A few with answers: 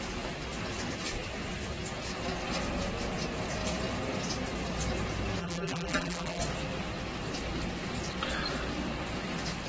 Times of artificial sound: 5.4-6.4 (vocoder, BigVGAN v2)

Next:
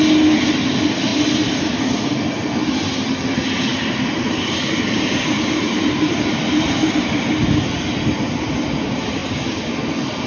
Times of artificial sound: 1.1-2.0 (vocoder, BigVGAN v2); 3.7-7.3

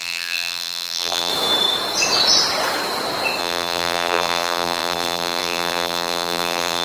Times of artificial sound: 0.0-1.3 (vocoder, BigVGAN v2); 3.4-6.8